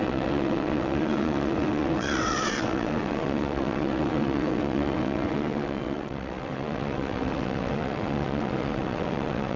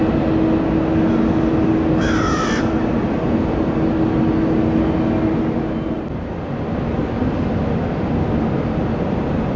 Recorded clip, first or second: second